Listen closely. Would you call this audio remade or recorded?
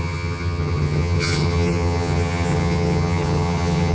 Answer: remade